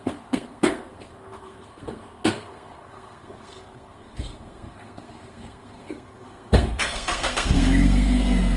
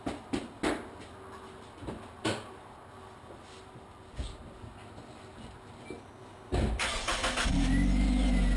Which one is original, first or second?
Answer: second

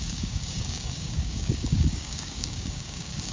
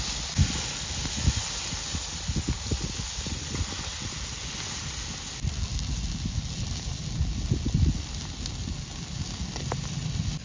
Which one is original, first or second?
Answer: second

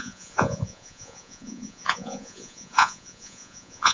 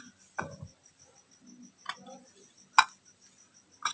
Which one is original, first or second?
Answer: second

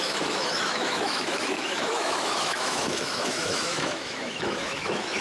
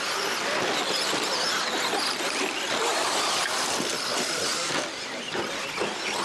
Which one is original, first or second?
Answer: second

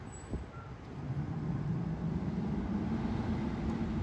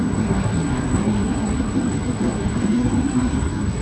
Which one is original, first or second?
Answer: first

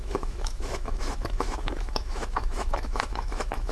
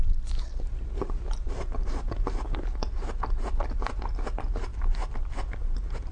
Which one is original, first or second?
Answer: second